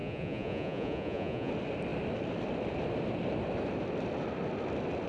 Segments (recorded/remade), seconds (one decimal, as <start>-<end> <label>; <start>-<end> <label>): 0.0-1.5 remade; 1.5-5.1 recorded